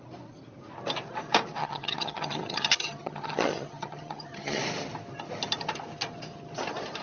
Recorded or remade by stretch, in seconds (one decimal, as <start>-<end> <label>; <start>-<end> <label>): 0.0-1.6 recorded; 1.6-4.6 remade; 4.6-7.0 recorded